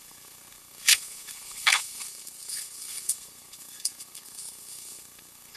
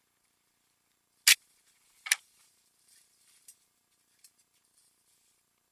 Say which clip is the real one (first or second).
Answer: second